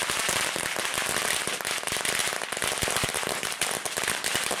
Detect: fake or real real